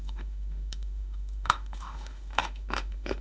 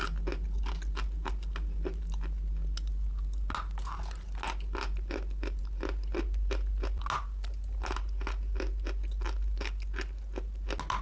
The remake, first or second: first